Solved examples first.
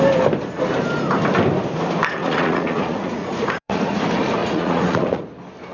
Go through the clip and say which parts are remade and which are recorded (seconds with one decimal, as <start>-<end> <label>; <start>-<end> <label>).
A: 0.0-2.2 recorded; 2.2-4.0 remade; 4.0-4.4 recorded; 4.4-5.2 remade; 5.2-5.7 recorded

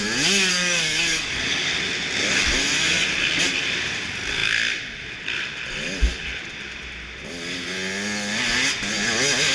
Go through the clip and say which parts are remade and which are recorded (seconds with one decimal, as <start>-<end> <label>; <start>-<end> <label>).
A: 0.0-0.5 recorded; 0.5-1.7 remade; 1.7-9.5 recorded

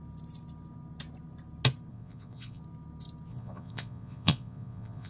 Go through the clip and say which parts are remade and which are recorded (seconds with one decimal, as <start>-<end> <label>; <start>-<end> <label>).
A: 0.0-1.9 recorded; 1.9-2.6 remade; 2.6-3.3 recorded; 3.3-5.1 remade

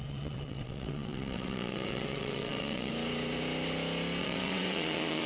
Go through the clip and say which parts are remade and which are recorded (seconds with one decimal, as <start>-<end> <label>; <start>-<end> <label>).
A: 0.0-2.9 remade; 2.9-4.2 recorded; 4.2-5.3 remade

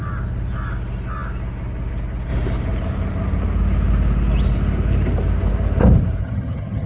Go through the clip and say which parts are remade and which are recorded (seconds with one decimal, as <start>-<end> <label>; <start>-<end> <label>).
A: 0.0-6.2 recorded; 6.2-6.9 remade

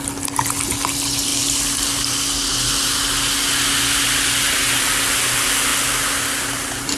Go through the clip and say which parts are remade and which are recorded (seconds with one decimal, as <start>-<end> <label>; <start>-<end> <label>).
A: 0.0-7.0 recorded